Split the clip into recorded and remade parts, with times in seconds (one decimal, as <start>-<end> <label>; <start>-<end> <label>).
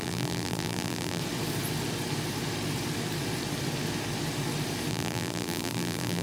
0.0-1.2 remade; 1.2-4.9 recorded; 4.9-6.2 remade